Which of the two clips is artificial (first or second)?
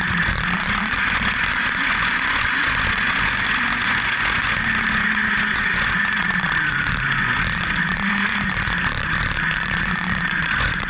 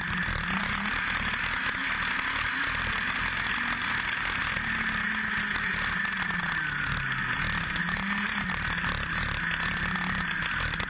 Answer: first